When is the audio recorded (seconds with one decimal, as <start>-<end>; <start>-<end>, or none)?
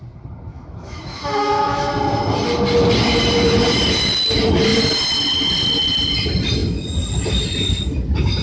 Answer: 0.0-0.5; 1.9-8.4